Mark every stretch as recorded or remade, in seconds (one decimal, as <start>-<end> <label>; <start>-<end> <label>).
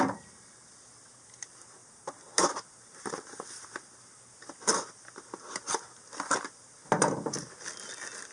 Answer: 0.0-8.3 recorded